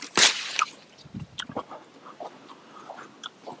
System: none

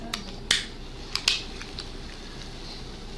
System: none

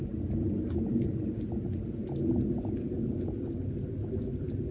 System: none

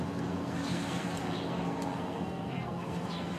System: codec, SNAC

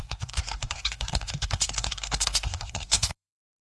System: codec, SNAC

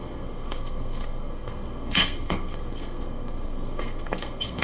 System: codec, SNAC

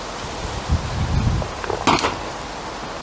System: none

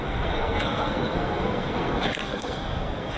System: codec, SNAC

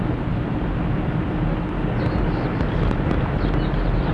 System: none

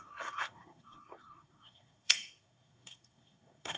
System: codec, SNAC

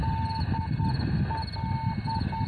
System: none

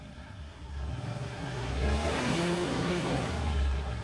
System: codec, SNAC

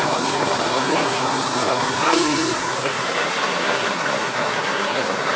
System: codec, SNAC